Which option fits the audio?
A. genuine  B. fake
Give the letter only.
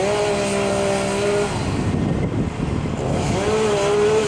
A